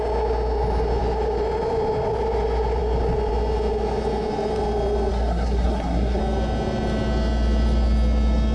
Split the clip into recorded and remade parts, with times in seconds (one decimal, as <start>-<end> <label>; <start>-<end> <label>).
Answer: 0.0-5.1 recorded; 5.1-6.2 remade; 6.2-8.5 recorded